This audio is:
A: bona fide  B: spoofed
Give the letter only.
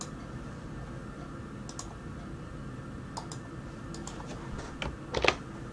A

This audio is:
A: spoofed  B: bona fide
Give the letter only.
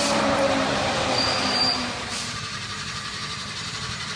A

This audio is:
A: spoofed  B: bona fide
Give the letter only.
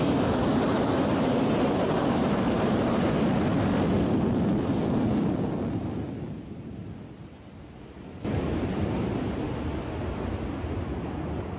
B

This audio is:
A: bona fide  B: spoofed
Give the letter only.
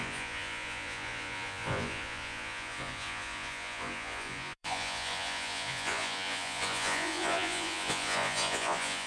B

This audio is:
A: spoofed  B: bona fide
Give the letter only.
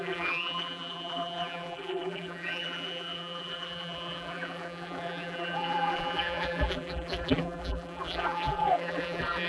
A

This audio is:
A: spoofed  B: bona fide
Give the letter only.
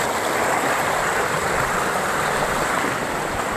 B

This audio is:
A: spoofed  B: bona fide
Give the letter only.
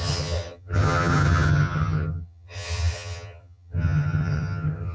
A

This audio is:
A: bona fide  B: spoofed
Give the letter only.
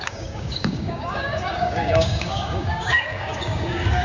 B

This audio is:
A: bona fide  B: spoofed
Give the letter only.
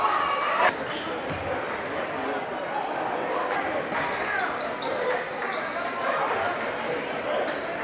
A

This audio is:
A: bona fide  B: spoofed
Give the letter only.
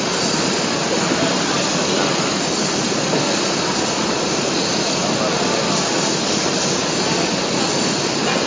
A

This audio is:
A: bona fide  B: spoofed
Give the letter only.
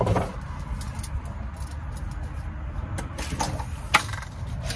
A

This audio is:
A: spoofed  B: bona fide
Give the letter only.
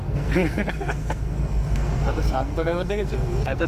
A